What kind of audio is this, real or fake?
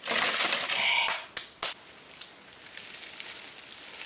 real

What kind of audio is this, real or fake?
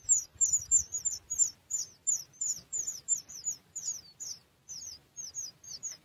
real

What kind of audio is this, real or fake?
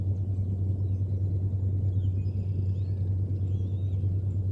real